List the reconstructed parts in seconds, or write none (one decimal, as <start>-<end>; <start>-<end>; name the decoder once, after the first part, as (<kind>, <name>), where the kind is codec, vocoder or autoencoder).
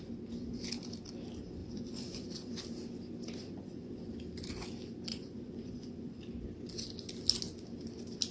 1.6-2.5 (vocoder, Vocos); 3.4-4.1; 5.1-6.2